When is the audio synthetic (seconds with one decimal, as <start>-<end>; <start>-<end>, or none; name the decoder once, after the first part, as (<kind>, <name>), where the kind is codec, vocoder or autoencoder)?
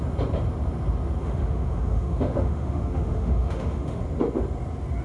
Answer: 1.2-4.0 (autoencoder, DAC-VAE)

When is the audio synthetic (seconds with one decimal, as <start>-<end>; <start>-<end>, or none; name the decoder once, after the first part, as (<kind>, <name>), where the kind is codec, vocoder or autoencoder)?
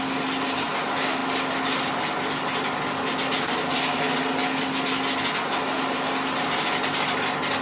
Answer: none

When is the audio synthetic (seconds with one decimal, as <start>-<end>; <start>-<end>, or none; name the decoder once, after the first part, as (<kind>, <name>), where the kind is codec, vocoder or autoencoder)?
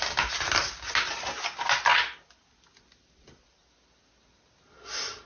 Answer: none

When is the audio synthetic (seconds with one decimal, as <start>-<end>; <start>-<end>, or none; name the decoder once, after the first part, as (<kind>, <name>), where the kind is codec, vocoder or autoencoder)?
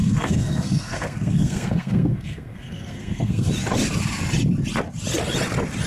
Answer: 0.0-3.5 (codec, SNAC)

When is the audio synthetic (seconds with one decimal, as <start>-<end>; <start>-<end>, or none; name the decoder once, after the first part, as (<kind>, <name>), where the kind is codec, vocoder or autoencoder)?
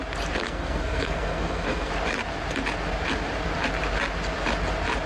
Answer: 0.4-1.9 (codec, SNAC)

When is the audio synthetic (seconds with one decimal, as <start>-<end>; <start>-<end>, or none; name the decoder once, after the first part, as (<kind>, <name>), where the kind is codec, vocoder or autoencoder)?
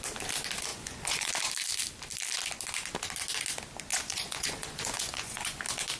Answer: 0.7-1.3 (vocoder, Vocos); 3.9-5.6